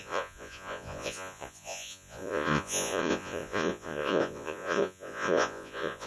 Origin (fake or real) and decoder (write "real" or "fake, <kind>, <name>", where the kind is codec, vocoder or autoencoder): fake, vocoder, Vocos